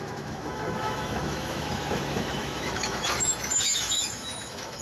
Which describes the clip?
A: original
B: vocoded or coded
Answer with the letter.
B